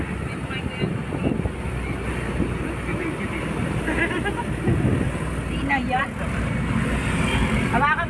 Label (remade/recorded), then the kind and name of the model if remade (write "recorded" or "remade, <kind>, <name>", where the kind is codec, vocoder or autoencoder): recorded